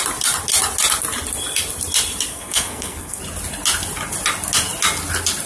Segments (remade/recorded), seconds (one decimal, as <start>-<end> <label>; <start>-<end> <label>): 0.0-2.3 recorded; 2.3-3.2 remade; 3.2-5.5 recorded